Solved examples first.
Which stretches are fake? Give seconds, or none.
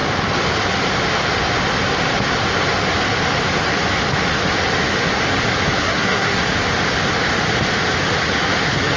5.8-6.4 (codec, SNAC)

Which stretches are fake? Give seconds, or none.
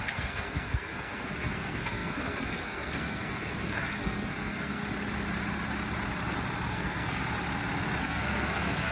0.0-4.8 (codec, SNAC); 6.7-7.2; 8.0-8.9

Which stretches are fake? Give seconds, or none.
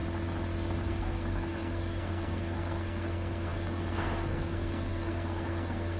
0.8-6.0 (codec, SNAC)